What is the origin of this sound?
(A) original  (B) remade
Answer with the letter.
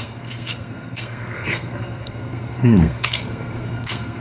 B